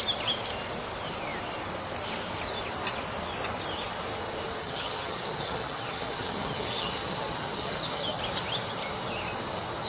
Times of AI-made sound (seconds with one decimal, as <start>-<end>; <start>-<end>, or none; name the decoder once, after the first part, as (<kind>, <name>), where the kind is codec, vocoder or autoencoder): 4.6-8.2 (vocoder, HiFi-GAN)